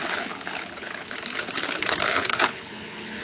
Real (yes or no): no